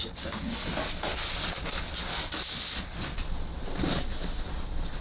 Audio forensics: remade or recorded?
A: recorded